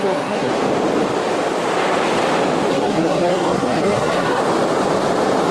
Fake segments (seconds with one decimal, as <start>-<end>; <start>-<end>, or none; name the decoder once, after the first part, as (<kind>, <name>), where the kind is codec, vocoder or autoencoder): 0.0-0.5 (codec, SNAC); 2.7-4.4